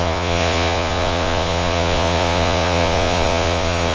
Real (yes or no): no